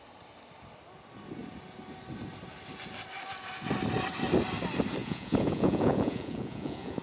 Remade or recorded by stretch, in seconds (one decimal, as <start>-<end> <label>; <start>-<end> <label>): 0.0-5.0 recorded; 5.0-7.0 remade